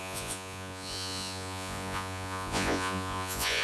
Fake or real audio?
fake